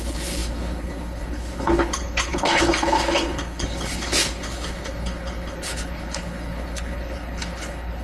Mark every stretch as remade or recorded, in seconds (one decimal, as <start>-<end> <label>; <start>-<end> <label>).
0.0-8.0 remade